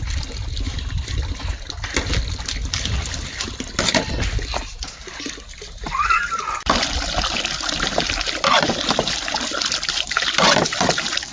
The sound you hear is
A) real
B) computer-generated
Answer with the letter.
A